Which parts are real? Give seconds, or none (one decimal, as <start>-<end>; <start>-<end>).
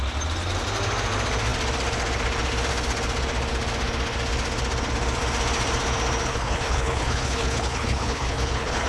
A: 0.0-6.3